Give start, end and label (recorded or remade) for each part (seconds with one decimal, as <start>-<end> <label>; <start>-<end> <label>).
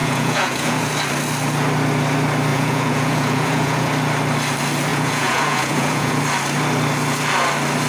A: 0.0-0.9 remade; 0.9-2.5 recorded; 2.5-3.9 remade; 3.9-4.9 recorded; 4.9-6.2 remade; 6.2-7.9 recorded